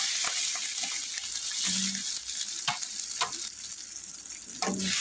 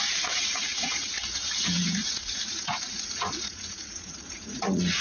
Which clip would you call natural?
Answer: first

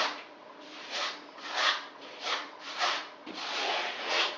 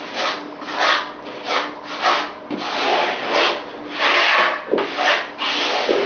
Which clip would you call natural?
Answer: second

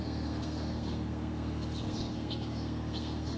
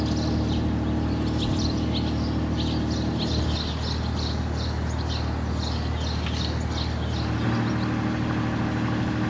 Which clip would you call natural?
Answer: second